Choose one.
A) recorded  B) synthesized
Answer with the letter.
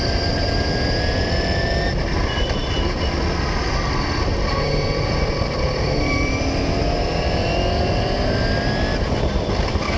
A